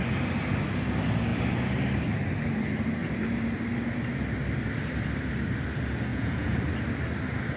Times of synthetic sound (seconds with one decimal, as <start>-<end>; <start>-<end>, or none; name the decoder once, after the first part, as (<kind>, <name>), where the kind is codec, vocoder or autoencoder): 6.1-6.6 (vocoder, Vocos)